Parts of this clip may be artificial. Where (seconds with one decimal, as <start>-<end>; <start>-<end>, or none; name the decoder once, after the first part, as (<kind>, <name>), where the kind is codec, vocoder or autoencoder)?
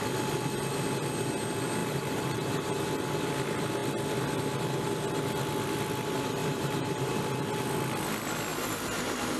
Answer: 1.8-2.9 (vocoder, BigVGAN v2); 6.4-7.2; 8.5-9.4